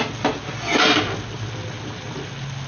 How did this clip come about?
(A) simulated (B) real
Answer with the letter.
B